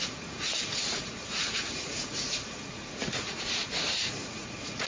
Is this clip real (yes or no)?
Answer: no